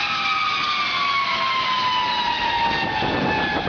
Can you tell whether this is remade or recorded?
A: recorded